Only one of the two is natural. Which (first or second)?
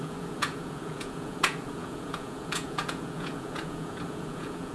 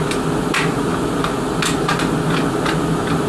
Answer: second